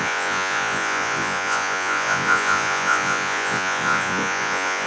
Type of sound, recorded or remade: remade